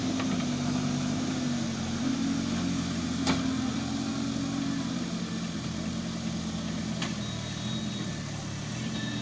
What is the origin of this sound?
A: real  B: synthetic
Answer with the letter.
A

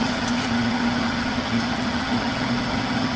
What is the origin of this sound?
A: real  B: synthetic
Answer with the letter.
B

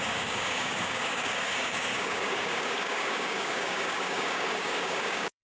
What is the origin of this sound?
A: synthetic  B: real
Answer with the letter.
A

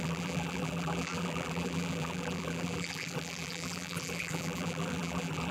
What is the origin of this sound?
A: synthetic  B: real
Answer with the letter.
A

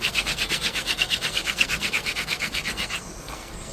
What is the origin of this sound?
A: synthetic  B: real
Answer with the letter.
A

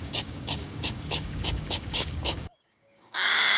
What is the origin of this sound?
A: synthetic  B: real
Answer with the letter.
A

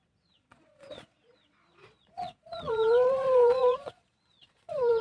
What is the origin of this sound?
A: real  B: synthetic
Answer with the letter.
B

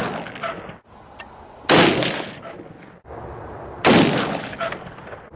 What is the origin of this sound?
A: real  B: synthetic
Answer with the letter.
A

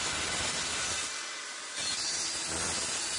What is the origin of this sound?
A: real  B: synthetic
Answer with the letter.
A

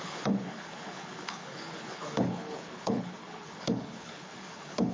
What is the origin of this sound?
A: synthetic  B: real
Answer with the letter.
A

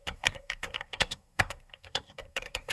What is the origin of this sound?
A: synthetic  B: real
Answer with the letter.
A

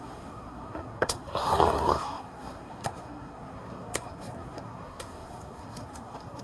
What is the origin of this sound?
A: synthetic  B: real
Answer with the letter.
A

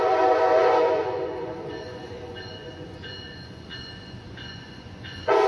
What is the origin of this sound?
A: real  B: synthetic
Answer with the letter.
B